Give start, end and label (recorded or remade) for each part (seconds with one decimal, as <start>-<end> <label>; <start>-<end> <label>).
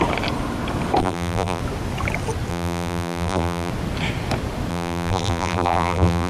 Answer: 0.0-1.0 recorded; 1.0-1.6 remade; 1.6-2.5 recorded; 2.5-3.7 remade; 3.7-4.7 recorded; 4.7-6.3 remade